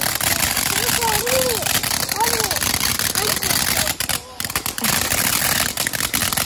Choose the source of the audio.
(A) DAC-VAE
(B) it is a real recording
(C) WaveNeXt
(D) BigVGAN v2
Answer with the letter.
B